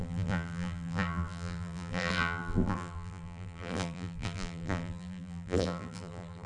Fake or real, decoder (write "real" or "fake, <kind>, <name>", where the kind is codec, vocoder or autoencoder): fake, vocoder, BigVGAN v2